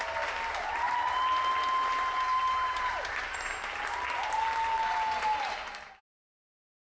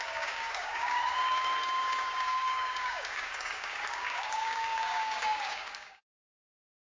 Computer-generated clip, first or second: second